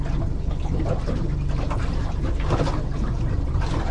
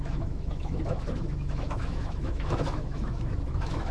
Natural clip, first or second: first